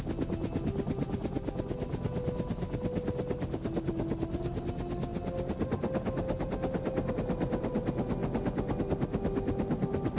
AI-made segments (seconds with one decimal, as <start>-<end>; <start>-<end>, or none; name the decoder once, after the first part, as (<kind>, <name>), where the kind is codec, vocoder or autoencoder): none